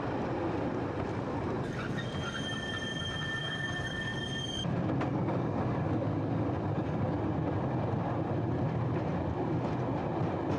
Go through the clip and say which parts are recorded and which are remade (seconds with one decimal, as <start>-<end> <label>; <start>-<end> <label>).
0.0-3.4 recorded; 3.4-4.2 remade; 4.2-5.1 recorded; 5.1-7.1 remade; 7.1-10.6 recorded